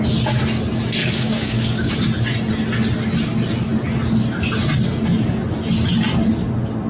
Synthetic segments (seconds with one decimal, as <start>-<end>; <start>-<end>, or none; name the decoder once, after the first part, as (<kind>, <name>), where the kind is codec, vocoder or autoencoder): 1.0-1.9 (codec, DAC)